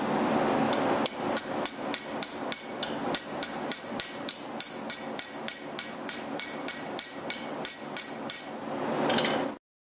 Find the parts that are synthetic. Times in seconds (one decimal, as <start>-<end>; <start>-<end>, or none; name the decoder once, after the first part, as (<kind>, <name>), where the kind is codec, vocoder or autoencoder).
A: 6.0-8.4 (vocoder, BigVGAN v2)